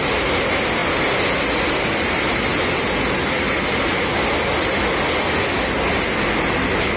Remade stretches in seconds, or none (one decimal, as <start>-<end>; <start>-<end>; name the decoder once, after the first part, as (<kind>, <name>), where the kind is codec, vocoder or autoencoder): none